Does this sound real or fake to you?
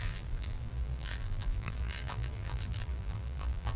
fake